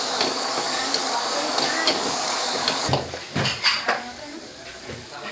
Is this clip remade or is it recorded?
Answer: remade